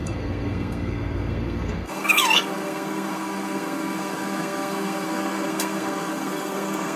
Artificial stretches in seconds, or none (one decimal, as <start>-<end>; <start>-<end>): 0.0-7.0